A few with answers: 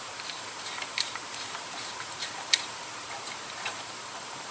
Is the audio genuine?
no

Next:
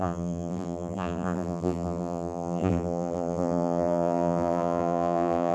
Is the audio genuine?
no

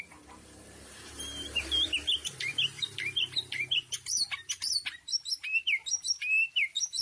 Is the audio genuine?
no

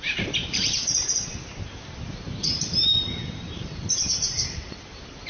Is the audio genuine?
no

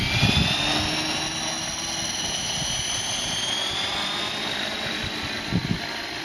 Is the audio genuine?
yes